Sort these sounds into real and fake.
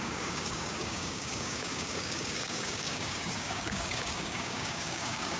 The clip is fake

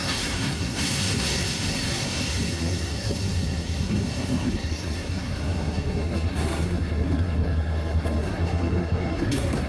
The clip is fake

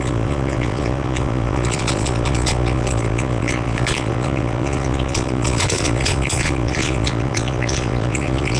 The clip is fake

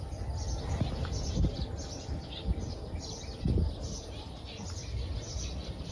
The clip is real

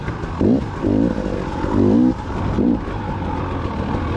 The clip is real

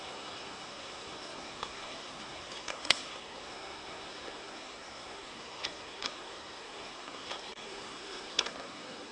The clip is fake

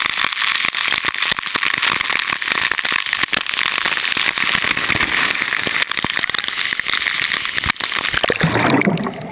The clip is real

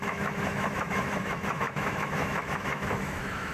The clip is fake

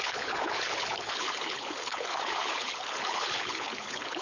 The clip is fake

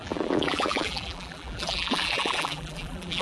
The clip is fake